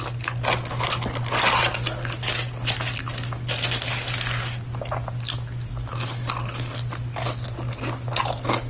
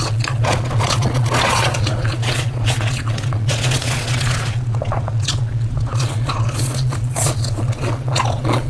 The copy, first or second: second